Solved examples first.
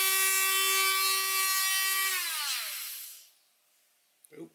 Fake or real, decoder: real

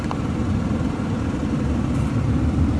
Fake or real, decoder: real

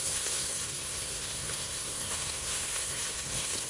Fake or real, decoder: fake, codec, SNAC